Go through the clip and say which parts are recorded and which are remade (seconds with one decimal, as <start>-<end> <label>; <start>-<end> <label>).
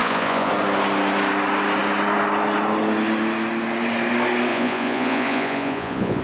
0.0-0.5 remade; 0.5-4.5 recorded; 4.5-6.2 remade